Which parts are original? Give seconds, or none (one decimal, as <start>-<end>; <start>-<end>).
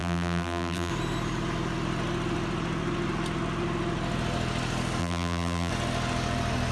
0.9-5.0; 5.7-6.7